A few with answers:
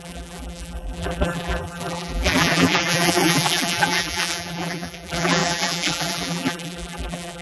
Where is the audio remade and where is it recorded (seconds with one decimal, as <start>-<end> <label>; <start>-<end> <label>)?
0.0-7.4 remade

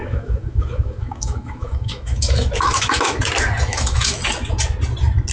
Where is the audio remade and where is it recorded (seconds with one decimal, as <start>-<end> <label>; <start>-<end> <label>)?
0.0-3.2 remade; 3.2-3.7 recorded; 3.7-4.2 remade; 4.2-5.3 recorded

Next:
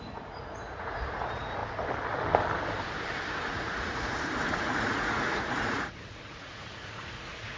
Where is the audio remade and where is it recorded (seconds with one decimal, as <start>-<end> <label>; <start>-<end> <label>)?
0.0-1.6 remade; 1.6-3.3 recorded; 3.3-7.6 remade

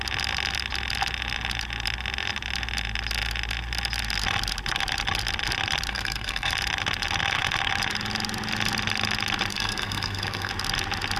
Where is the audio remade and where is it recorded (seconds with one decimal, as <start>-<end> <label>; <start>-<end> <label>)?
0.0-5.9 recorded; 5.9-6.5 remade; 6.5-9.5 recorded; 9.5-10.5 remade; 10.5-11.2 recorded

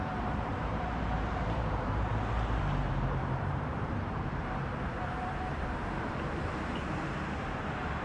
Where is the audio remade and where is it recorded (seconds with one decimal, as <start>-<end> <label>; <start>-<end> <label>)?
0.0-2.1 remade; 2.1-2.6 recorded; 2.6-8.0 remade

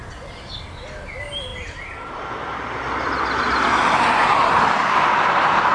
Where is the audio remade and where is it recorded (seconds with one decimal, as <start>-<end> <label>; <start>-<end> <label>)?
0.0-1.5 recorded; 1.5-4.9 remade; 4.9-5.7 recorded